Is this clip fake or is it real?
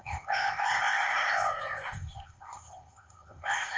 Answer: fake